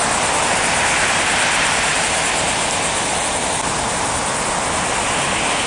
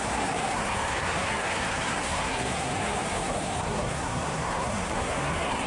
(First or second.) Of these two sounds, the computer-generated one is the second